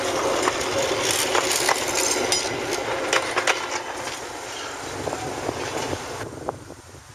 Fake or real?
real